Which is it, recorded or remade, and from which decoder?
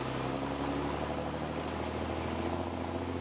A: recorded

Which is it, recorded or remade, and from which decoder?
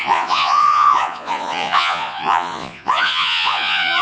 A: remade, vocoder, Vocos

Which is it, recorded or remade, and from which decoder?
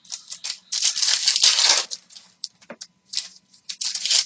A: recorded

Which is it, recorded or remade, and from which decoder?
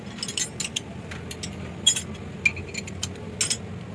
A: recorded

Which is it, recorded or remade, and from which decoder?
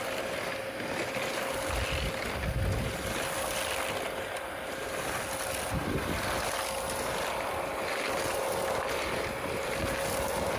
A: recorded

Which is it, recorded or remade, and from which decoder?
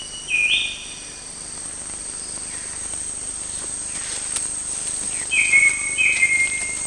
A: recorded